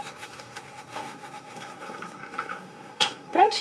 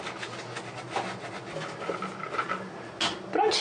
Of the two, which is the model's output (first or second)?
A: first